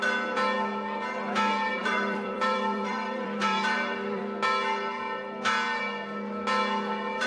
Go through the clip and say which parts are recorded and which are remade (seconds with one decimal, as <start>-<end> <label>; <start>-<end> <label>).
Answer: 0.0-1.8 recorded; 1.8-4.2 remade; 4.2-7.3 recorded